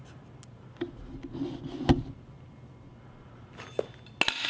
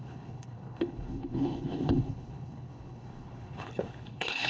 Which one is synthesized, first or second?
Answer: second